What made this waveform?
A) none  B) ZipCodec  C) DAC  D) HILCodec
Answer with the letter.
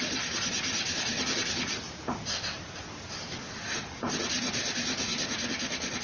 A